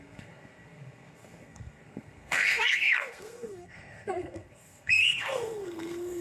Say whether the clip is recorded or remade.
remade